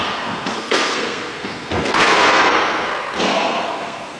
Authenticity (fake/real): fake